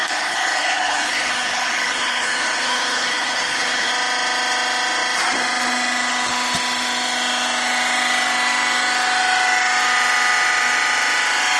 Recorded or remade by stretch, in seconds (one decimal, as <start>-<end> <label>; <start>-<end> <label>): 0.0-3.9 remade; 3.9-11.6 recorded